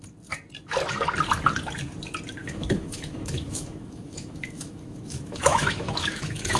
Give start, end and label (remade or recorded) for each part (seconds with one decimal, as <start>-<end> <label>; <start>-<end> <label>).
0.0-2.4 recorded; 2.4-6.6 remade